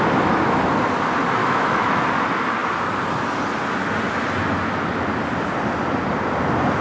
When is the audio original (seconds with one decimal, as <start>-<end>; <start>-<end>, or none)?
0.0-1.4; 2.0-6.8